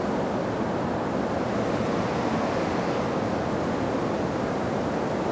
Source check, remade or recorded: recorded